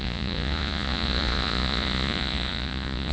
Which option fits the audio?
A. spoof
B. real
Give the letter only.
A